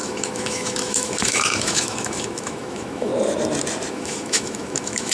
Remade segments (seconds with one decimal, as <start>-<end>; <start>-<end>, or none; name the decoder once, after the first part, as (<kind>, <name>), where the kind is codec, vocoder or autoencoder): 0.0-3.1 (autoencoder, DAC-VAE); 3.9-5.1